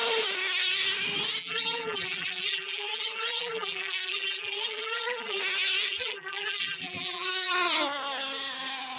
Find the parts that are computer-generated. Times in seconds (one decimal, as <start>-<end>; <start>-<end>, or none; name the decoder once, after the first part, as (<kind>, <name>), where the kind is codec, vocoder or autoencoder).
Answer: 1.4-5.4 (vocoder, BigVGAN v2); 5.9-7.5